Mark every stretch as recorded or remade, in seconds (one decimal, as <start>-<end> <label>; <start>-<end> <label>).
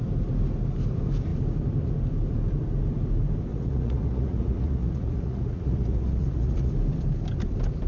0.0-3.5 recorded; 3.5-6.7 remade; 6.7-7.9 recorded